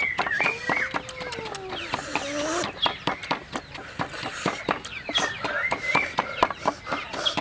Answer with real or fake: real